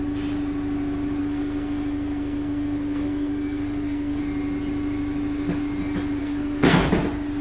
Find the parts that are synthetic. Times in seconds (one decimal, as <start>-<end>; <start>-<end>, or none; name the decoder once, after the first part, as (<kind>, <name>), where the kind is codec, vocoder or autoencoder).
1.2-4.2 (codec, SNAC); 6.2-6.9